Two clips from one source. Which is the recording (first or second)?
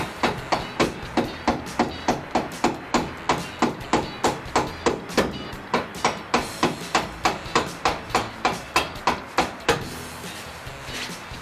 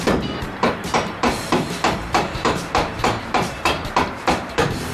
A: first